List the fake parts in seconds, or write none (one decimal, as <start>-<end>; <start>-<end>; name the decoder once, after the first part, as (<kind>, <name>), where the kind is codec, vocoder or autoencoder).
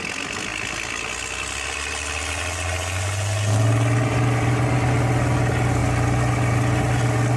none